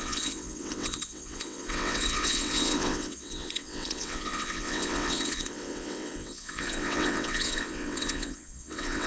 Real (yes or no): no